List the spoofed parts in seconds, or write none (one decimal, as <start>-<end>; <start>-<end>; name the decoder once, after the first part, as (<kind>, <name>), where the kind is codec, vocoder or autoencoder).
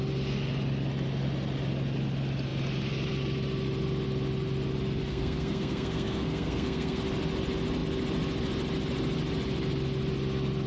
5.1-7.0 (codec, SNAC)